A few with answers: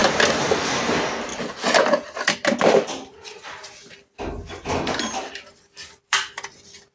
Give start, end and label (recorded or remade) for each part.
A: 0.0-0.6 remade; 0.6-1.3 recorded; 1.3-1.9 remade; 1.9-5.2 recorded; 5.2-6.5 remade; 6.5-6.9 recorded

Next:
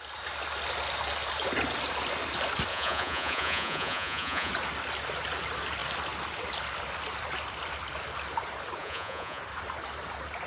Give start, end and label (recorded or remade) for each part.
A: 0.0-2.7 recorded; 2.7-4.5 remade; 4.5-8.8 recorded; 8.8-9.4 remade; 9.4-10.5 recorded

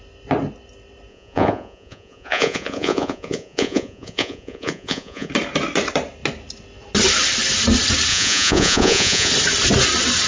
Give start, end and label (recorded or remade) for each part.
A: 0.0-1.1 recorded; 1.1-5.3 remade; 5.3-8.1 recorded; 8.1-9.3 remade; 9.3-10.3 recorded

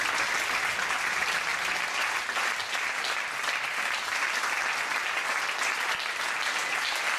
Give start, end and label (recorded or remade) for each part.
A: 0.0-7.2 recorded

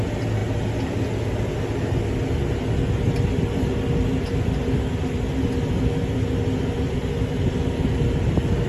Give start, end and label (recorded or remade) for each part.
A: 0.0-8.7 recorded

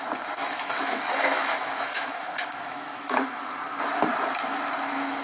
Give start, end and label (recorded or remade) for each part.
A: 0.0-0.4 recorded; 0.4-3.5 remade; 3.5-5.2 recorded

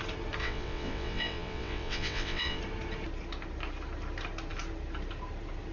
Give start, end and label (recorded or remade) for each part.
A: 0.0-0.4 recorded; 0.4-2.6 remade; 2.6-5.7 recorded